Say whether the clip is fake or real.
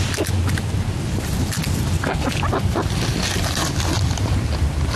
real